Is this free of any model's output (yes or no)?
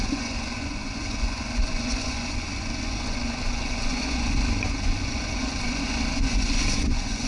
no